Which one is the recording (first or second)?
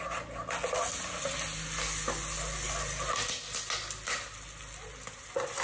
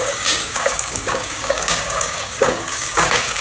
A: first